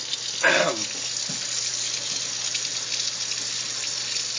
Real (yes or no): yes